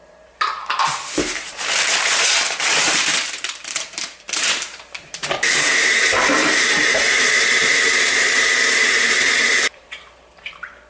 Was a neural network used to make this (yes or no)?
yes